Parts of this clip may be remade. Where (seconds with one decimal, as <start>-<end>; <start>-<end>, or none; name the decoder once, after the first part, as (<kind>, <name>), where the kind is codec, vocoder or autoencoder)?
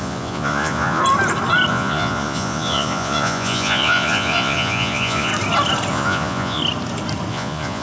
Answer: 0.0-1.0 (vocoder, Vocos); 1.7-5.3; 5.9-6.6; 7.3-7.8